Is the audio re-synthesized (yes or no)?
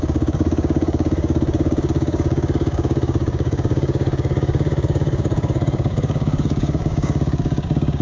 yes